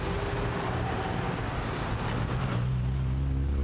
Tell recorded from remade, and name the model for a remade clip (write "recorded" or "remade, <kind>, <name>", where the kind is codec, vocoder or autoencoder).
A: recorded